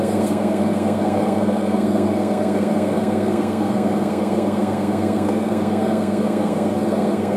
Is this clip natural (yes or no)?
no